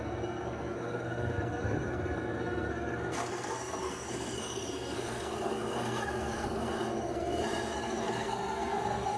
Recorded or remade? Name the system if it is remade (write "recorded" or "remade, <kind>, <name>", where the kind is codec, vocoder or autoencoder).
remade, codec, SNAC